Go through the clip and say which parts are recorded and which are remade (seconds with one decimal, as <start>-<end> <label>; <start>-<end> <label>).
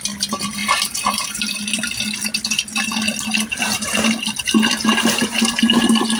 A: 0.0-0.6 recorded; 0.6-1.6 remade; 1.6-3.5 recorded; 3.5-5.6 remade; 5.6-6.2 recorded